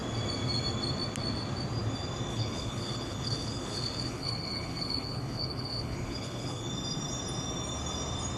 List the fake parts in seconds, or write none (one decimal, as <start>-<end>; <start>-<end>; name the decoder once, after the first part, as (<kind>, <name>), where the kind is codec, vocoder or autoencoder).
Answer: 2.3-6.7 (codec, HILCodec)